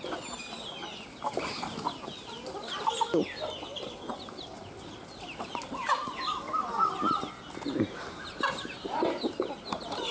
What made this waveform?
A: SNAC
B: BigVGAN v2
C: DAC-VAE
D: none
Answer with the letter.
D